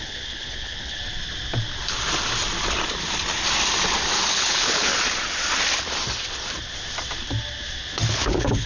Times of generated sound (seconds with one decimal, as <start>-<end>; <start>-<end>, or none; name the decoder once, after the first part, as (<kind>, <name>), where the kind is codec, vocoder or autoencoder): 0.0-1.0 (codec, HILCodec); 4.3-4.9; 8.1-8.7